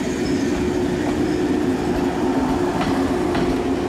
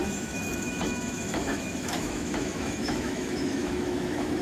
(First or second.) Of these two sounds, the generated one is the second